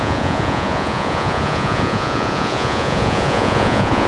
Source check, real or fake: fake